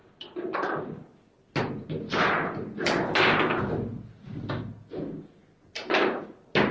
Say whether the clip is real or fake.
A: real